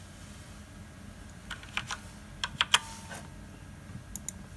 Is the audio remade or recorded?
recorded